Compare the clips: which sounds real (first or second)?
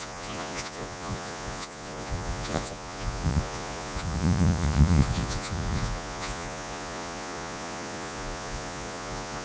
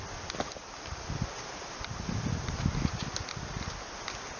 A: second